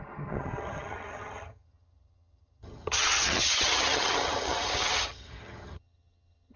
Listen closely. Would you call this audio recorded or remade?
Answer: remade